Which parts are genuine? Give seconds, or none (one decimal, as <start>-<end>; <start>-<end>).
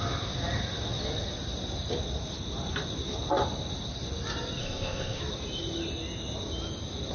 0.0-4.6; 5.2-7.1